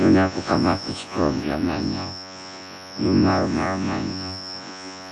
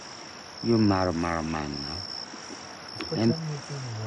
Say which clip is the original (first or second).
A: second